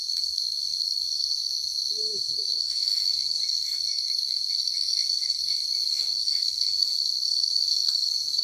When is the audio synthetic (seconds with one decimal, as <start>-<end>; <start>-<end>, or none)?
0.0-8.4